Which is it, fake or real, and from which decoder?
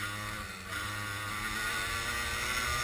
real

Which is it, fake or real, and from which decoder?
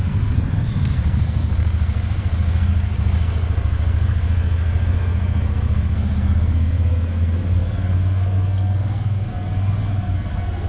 fake, codec, SNAC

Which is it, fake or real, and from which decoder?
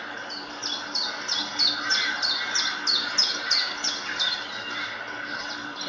real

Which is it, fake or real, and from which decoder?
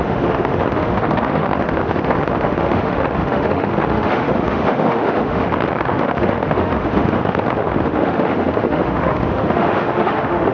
fake, autoencoder, DAC-VAE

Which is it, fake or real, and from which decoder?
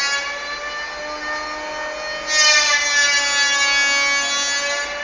real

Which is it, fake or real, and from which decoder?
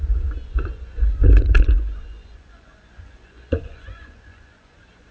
fake, vocoder, Vocos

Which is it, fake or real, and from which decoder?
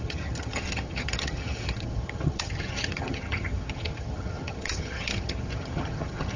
fake, vocoder, HiFi-GAN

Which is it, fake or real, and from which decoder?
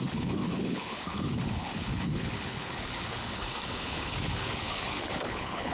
fake, codec, HILCodec